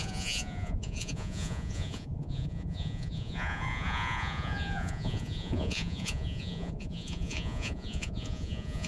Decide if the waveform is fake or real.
fake